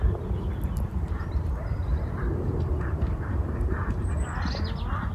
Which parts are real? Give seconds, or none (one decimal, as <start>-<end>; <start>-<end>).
0.0-0.9; 4.0-5.1